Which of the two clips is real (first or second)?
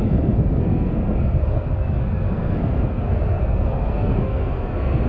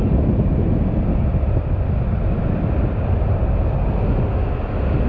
second